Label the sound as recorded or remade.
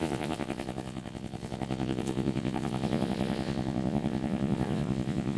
remade